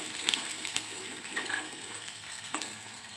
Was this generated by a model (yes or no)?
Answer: yes